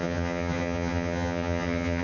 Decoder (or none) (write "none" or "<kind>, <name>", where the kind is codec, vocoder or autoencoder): vocoder, HiFi-GAN